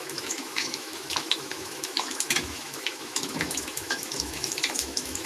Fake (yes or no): yes